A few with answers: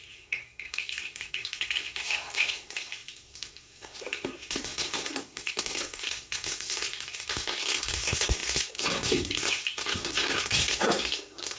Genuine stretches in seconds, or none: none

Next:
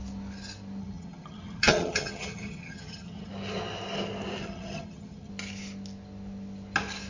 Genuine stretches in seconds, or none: 0.0-0.8; 3.3-4.4; 5.3-7.1

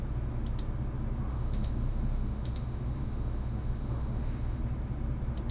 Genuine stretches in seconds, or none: 0.0-1.3; 4.6-5.5

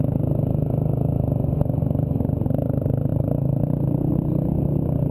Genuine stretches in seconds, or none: 0.0-5.1

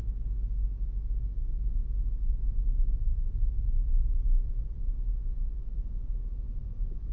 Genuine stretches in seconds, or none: 0.0-7.1